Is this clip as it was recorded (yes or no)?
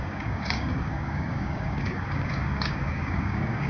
no